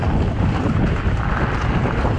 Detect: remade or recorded recorded